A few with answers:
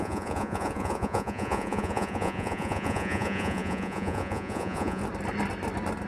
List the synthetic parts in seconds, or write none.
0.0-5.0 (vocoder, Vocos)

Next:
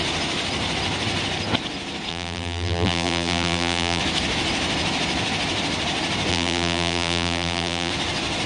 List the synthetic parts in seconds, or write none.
2.1-4.0 (vocoder, BigVGAN v2); 6.3-7.9

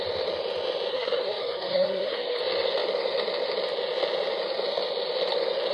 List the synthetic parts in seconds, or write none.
0.9-2.4 (codec, SNAC)

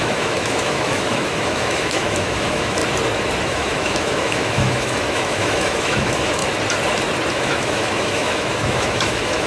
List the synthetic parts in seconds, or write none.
0.0-2.8 (autoencoder, DAC-VAE); 3.4-6.4; 7.3-9.5